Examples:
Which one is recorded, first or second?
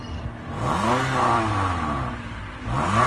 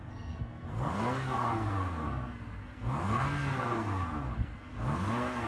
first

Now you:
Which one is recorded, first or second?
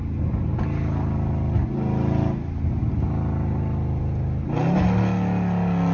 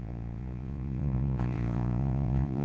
first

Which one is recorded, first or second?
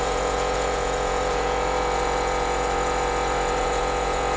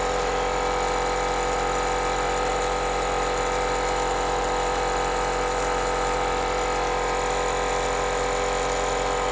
second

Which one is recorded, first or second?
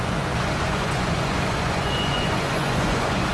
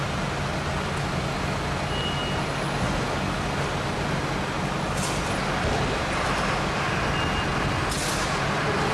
second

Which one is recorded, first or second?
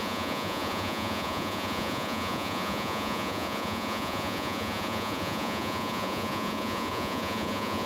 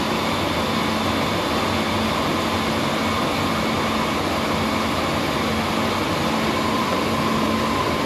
second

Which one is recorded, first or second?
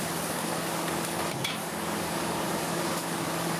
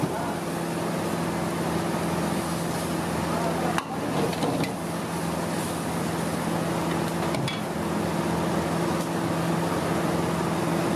second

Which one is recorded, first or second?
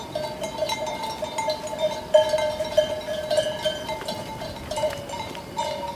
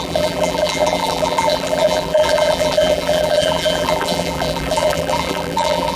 first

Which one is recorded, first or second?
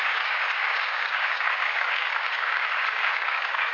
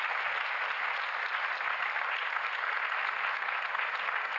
second